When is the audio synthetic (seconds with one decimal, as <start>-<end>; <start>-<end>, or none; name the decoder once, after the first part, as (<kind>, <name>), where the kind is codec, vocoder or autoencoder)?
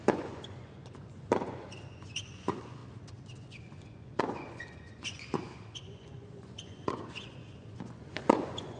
0.0-2.8 (vocoder, Vocos); 3.4-8.8